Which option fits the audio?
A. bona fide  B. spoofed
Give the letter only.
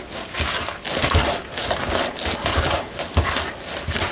A